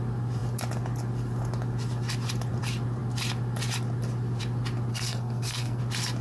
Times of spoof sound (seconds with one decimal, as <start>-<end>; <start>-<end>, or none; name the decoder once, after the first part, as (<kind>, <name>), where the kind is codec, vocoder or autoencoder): 4.9-5.8 (codec, SNAC)